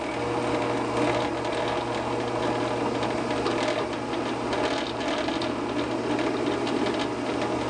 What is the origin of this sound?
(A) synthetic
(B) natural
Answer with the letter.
B